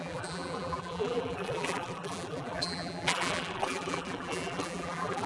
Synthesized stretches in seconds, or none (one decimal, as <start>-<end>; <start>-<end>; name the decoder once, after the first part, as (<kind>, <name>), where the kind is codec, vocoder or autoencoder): 0.0-5.3 (vocoder, BigVGAN v2)